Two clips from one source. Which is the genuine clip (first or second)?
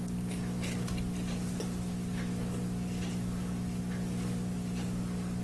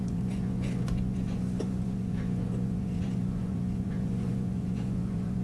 first